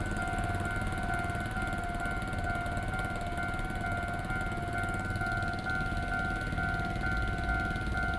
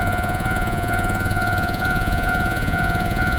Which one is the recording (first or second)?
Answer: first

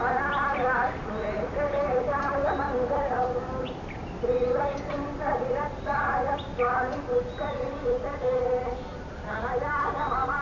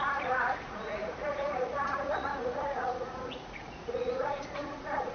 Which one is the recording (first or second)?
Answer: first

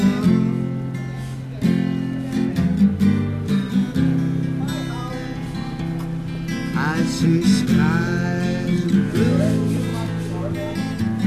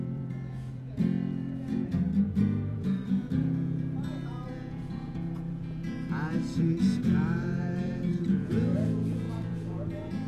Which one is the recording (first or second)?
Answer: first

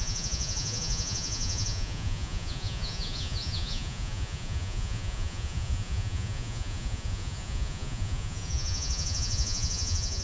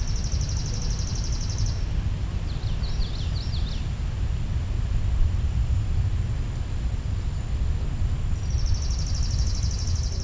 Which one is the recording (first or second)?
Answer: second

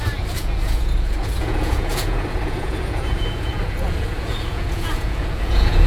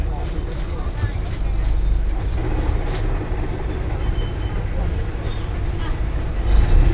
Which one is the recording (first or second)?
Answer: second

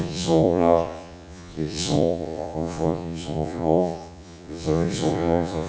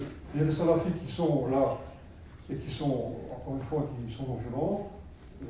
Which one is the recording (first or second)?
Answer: second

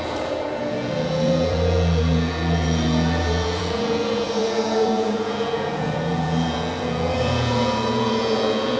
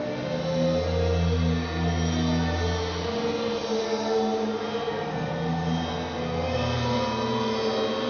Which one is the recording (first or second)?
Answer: second